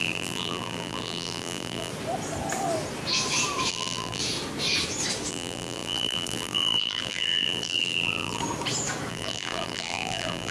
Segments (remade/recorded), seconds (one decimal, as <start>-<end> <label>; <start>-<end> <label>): 0.0-1.9 remade; 1.9-3.7 recorded; 3.7-4.2 remade; 4.2-5.3 recorded; 5.3-8.4 remade; 8.4-9.1 recorded; 9.1-10.5 remade